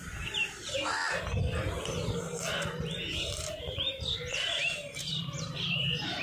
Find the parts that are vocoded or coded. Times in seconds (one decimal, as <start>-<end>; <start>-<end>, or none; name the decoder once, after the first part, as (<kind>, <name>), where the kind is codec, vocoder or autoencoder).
0.0-1.0 (vocoder, BigVGAN v2); 3.6-6.2